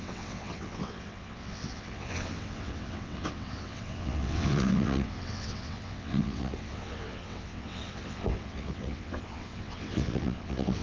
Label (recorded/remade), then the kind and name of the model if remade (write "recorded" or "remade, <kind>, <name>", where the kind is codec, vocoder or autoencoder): remade, vocoder, WaveNeXt